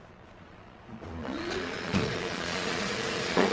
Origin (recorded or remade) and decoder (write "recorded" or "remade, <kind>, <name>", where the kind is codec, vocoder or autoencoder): remade, vocoder, Vocos